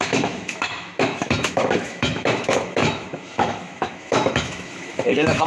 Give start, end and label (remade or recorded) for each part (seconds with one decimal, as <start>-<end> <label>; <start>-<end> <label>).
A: 0.0-5.5 remade